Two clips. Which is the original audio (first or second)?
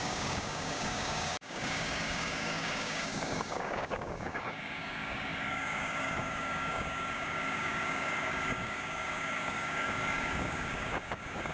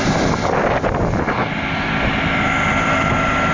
second